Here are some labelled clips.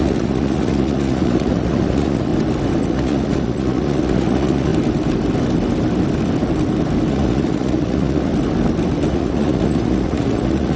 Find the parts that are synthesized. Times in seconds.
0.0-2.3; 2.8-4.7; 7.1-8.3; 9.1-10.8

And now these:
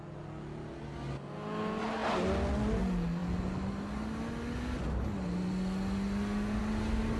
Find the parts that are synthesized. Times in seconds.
none